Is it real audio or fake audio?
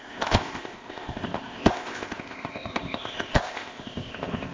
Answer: fake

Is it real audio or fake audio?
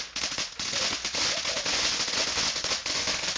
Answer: fake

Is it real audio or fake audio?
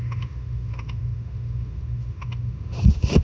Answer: fake